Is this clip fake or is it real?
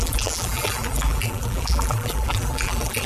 fake